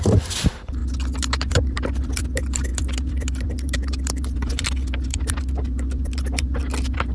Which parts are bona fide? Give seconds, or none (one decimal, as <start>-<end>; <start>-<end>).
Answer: none